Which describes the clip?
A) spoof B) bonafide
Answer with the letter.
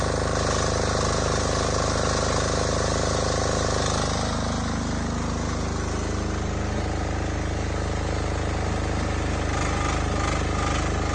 B